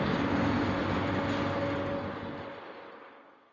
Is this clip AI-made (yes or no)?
no